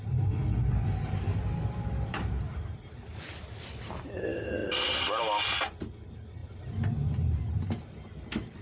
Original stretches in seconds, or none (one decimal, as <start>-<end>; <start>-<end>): 0.0-2.1; 3.1-6.4; 7.4-8.6